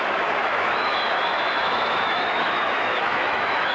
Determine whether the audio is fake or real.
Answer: fake